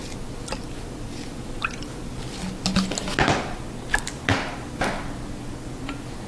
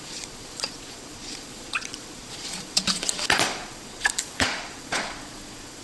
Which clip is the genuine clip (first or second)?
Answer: first